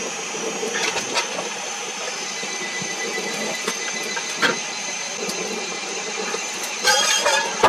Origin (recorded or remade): recorded